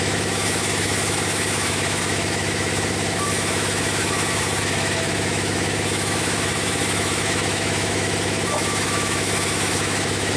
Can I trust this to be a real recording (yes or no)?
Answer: no